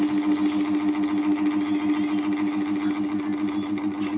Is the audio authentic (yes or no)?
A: yes